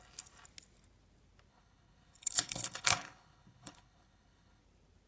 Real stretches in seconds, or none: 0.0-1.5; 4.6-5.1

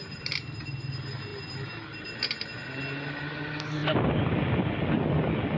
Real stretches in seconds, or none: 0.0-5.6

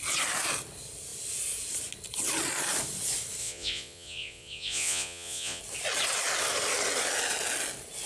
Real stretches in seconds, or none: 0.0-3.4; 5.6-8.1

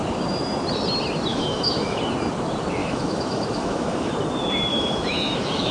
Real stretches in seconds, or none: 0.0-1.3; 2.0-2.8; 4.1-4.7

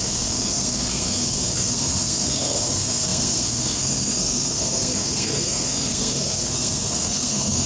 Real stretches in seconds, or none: none

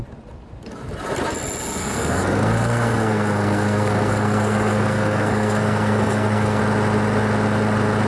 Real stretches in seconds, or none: 0.0-1.8; 6.6-8.1